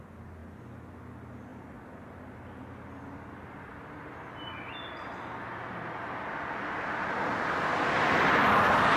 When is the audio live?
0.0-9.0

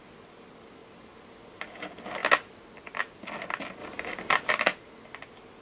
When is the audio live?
0.0-3.8; 4.5-5.6

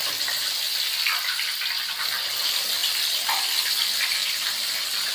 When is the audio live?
0.0-5.1

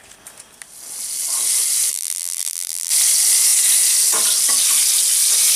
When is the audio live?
0.0-1.9; 2.9-5.6

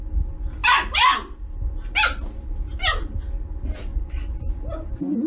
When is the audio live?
0.0-3.9

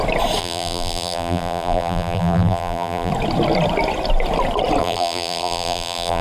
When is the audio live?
0.0-0.4; 3.1-4.8

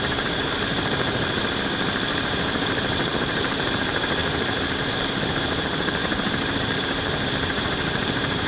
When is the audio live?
4.2-5.2